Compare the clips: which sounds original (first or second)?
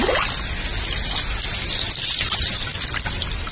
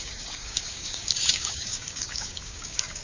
first